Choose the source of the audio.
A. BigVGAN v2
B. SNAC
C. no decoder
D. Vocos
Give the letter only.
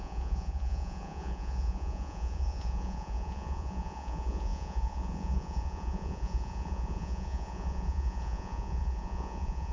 D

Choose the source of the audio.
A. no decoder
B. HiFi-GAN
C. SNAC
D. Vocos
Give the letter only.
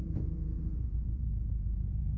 D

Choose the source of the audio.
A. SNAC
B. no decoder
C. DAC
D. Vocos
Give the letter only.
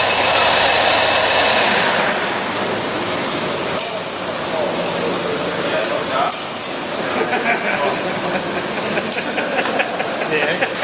B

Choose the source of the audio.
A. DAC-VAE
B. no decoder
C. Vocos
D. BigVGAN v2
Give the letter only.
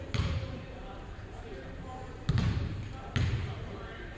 D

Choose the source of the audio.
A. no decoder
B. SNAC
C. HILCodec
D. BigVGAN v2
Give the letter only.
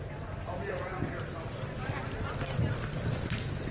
D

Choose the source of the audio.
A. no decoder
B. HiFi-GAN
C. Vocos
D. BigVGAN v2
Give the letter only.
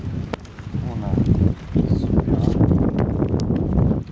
A